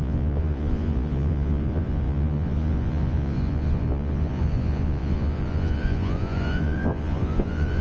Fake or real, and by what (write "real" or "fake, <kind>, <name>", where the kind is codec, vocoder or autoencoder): fake, vocoder, Vocos